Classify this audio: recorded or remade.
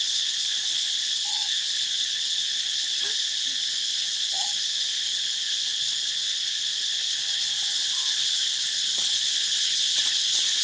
remade